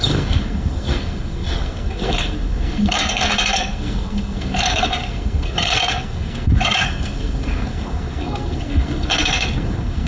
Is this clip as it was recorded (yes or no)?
no